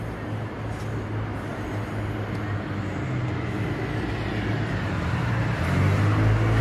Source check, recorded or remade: recorded